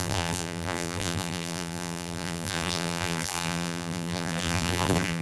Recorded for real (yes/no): no